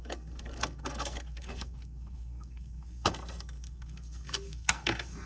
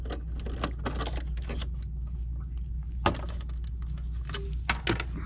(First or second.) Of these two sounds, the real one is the second